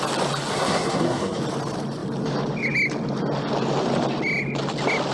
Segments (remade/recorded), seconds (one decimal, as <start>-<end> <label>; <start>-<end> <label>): 0.0-0.5 recorded; 0.5-1.4 remade; 1.4-5.1 recorded